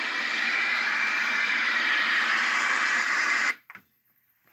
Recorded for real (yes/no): no